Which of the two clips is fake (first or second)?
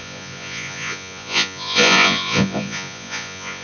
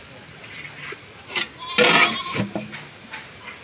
first